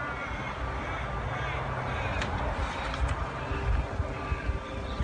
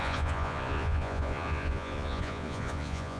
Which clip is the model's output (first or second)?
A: second